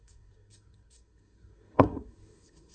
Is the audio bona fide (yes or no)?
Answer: no